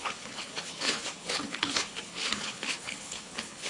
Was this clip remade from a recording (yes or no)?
yes